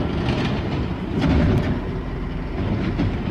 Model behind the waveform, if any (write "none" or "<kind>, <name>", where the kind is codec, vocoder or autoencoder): none